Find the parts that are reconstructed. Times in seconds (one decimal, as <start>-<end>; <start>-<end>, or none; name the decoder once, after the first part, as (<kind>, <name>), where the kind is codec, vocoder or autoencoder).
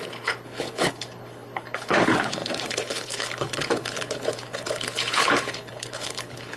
0.0-6.6 (codec, HILCodec)